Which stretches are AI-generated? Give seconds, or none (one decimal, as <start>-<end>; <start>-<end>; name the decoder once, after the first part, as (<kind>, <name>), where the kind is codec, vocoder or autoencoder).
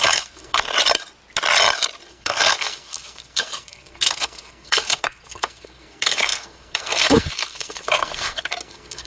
0.0-0.7 (codec, SNAC); 2.1-9.1